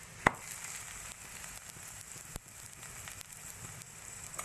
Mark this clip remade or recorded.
recorded